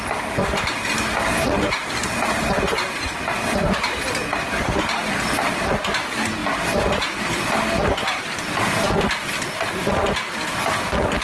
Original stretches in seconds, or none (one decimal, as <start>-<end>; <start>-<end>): 0.0-11.2